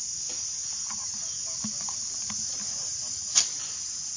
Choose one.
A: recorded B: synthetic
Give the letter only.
A